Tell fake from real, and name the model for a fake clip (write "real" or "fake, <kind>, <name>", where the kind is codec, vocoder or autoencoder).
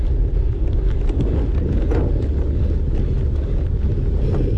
real